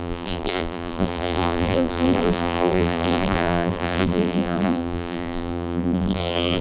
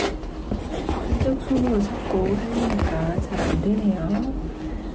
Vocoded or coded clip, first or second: first